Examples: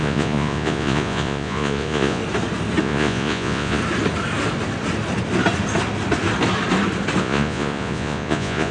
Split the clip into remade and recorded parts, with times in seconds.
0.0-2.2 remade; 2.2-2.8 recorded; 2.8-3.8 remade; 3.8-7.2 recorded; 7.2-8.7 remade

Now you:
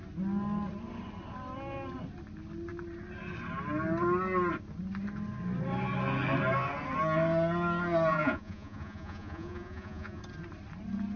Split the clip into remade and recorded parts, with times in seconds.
0.0-8.1 recorded; 8.1-10.2 remade; 10.2-11.2 recorded

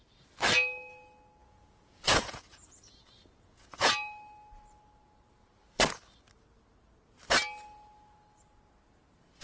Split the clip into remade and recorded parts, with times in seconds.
0.0-1.4 recorded; 1.4-3.9 remade; 3.9-9.4 recorded

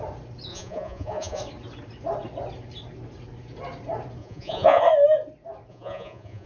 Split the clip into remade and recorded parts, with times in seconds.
0.0-0.5 recorded; 0.5-1.4 remade; 1.4-4.2 recorded; 4.2-4.8 remade; 4.8-5.7 recorded; 5.7-6.5 remade

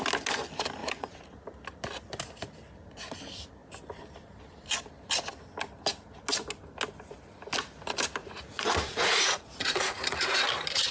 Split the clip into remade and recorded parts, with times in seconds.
0.0-0.8 recorded; 0.8-1.4 remade; 1.4-8.2 recorded; 8.2-10.4 remade; 10.4-10.9 recorded

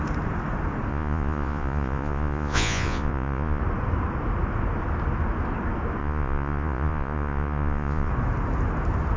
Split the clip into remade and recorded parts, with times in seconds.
0.0-0.9 recorded; 0.9-3.6 remade; 3.6-6.0 recorded; 6.0-8.1 remade; 8.1-9.2 recorded